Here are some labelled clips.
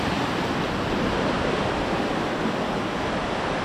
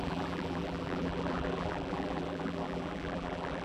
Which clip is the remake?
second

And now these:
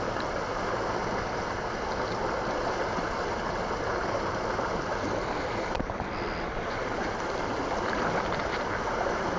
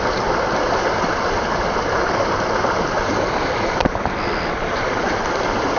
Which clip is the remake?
second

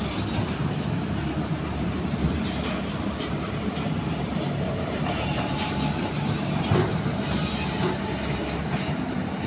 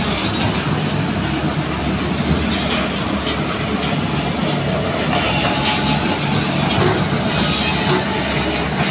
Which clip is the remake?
first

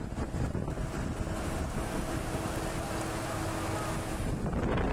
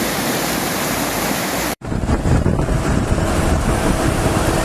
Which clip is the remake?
second